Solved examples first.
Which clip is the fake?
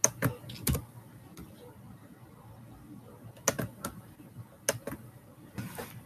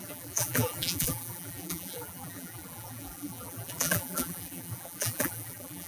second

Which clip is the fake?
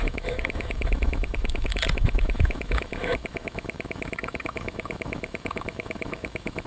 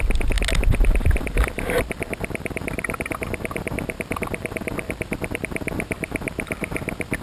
first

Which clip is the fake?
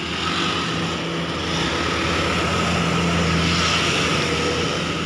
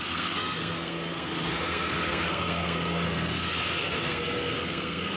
second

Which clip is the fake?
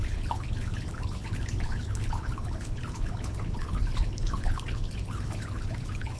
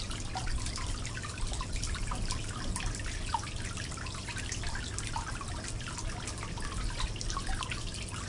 first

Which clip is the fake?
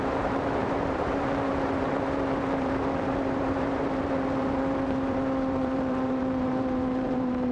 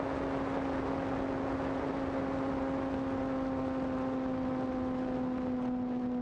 first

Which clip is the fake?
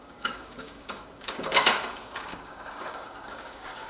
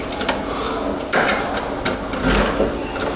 first